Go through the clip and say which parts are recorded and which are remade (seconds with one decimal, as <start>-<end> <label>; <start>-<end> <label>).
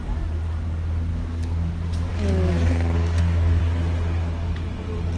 0.0-1.1 recorded; 1.1-1.7 remade; 1.7-2.1 recorded; 2.1-3.6 remade; 3.6-5.2 recorded